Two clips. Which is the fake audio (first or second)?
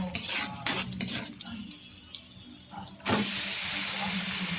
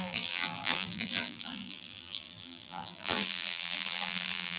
second